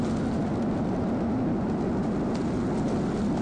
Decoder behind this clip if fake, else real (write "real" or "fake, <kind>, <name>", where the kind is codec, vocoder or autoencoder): real